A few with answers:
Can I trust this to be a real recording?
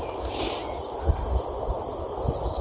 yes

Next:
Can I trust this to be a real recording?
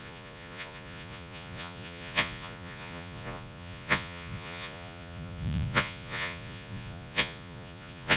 no